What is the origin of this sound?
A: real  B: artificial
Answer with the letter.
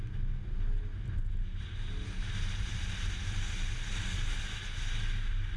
A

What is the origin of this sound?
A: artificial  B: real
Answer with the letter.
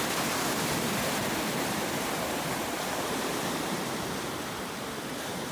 A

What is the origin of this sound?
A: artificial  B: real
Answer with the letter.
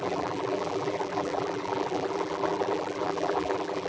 A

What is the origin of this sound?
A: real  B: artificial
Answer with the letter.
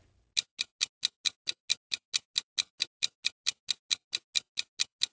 A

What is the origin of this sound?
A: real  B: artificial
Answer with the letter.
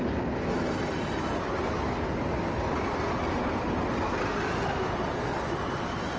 A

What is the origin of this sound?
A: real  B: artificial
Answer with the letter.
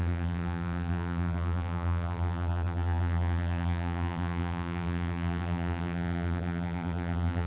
B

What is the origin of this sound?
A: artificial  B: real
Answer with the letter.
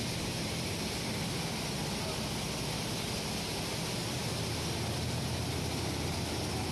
B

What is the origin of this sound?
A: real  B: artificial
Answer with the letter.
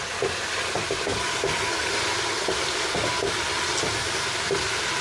A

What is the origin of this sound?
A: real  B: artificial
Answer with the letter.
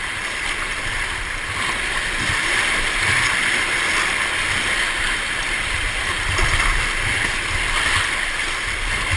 A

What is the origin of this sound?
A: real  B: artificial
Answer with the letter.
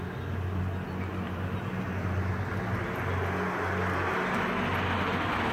A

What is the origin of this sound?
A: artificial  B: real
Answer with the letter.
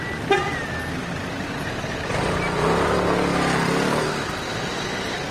B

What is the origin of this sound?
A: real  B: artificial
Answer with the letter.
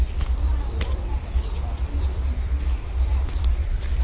B